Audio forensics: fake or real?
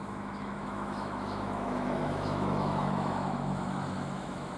fake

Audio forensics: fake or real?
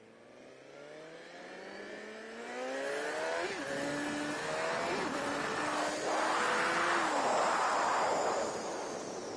real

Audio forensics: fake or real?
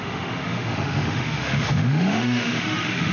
fake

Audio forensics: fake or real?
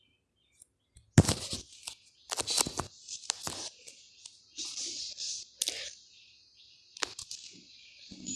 real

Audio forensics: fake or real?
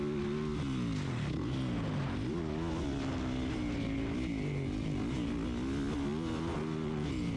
real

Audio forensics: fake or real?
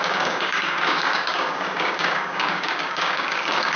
fake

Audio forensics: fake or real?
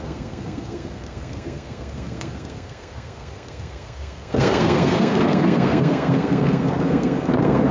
fake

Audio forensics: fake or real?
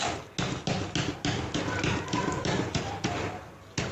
real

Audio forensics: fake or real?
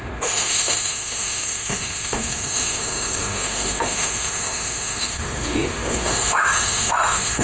fake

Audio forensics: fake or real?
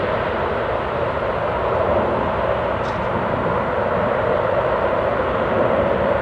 real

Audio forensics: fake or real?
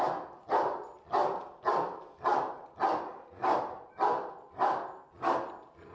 real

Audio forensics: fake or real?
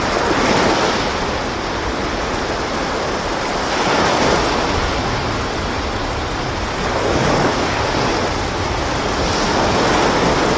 real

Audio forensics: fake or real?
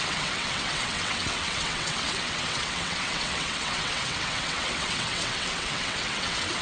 fake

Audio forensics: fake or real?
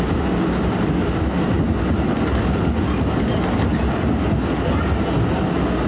real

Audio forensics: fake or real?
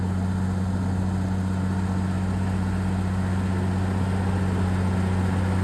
real